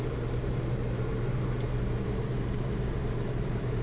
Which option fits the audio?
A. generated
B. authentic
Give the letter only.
A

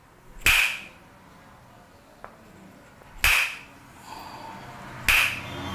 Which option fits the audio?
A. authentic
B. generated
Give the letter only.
A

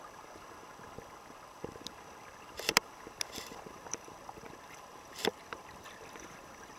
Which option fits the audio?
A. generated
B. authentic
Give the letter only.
A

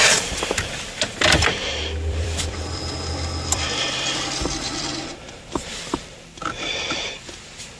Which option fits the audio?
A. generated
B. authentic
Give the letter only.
A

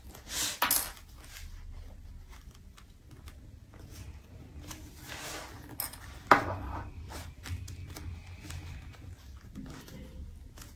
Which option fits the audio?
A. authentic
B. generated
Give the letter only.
A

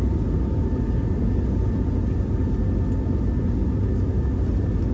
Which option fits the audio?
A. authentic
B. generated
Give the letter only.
A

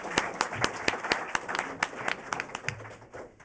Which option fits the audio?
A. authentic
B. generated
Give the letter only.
A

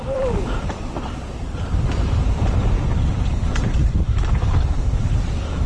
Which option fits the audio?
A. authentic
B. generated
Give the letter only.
B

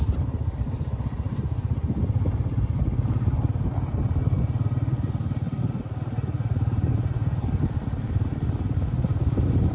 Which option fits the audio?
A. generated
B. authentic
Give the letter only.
B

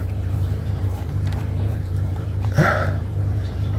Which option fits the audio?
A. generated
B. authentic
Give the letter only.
A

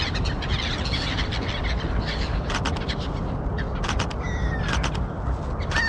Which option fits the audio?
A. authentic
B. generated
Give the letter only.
A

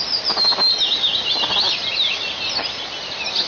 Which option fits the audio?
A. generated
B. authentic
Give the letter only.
B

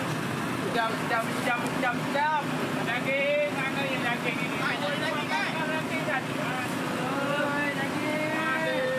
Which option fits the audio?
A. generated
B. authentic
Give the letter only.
B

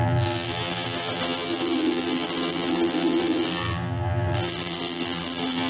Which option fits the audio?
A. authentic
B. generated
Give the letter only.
B